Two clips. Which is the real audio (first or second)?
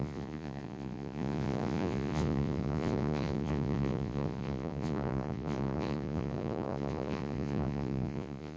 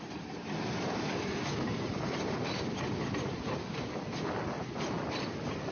second